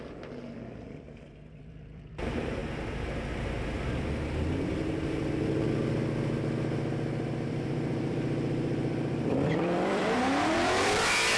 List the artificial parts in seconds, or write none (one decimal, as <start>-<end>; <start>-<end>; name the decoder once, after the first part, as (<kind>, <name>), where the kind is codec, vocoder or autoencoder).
0.0-2.6 (vocoder, BigVGAN v2); 7.5-11.4